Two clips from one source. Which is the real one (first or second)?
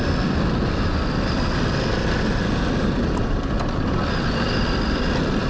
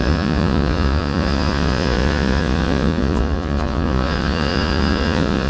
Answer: first